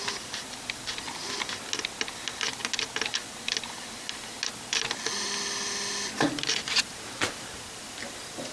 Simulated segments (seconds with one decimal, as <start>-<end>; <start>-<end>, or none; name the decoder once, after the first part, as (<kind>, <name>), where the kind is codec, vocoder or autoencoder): none